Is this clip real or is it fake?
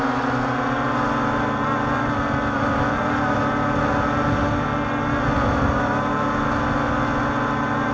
real